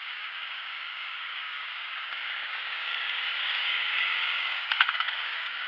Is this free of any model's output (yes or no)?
no